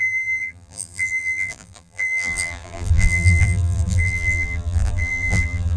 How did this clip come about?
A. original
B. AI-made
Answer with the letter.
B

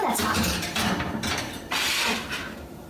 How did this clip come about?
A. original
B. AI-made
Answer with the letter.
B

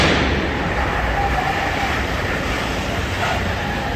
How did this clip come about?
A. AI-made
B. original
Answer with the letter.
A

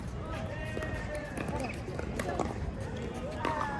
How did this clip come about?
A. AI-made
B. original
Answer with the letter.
B